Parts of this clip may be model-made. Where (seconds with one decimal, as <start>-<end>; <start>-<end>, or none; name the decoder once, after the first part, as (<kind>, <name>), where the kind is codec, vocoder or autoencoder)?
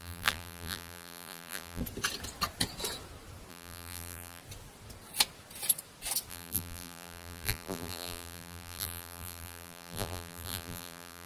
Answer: 0.0-1.8 (vocoder, BigVGAN v2); 3.5-4.4; 6.3-11.3